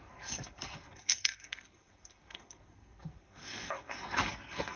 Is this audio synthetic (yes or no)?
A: yes